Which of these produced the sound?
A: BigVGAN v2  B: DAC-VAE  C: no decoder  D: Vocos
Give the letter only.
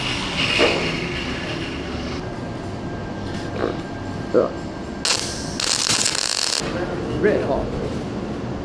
C